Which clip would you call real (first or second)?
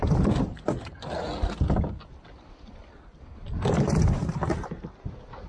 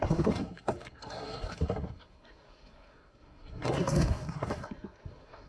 first